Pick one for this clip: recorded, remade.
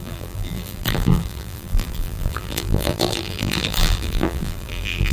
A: remade